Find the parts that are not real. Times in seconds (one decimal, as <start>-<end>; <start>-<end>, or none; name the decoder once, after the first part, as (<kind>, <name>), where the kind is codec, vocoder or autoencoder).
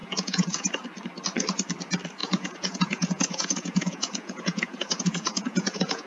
0.0-0.7 (vocoder, Vocos); 2.2-6.1